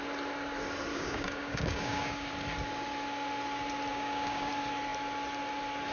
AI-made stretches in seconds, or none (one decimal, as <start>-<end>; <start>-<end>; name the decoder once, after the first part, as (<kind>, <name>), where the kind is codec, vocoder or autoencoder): 0.9-2.3 (codec, DAC); 3.9-4.5